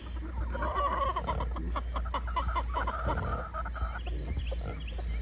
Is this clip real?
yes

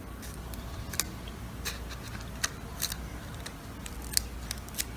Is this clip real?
yes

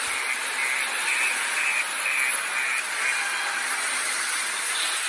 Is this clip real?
yes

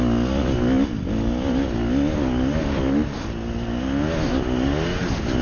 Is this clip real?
yes